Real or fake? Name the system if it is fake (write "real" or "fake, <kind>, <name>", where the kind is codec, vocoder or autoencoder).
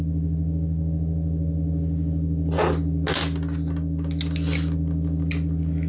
real